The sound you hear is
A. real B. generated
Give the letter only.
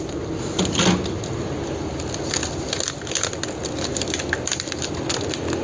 A